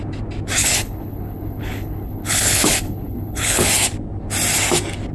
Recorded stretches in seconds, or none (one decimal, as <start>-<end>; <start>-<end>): 0.0-0.6; 3.7-5.1